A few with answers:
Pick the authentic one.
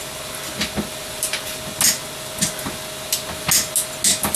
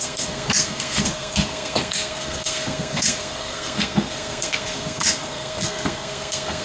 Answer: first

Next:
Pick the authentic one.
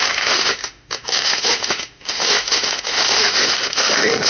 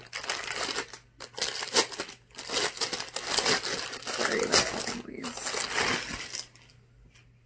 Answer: second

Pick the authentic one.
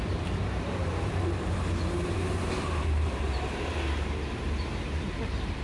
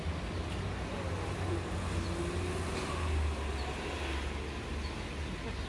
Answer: second